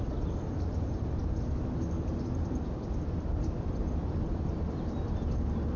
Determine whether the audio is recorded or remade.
recorded